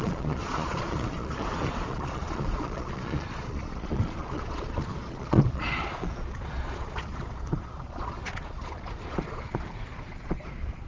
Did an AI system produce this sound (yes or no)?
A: yes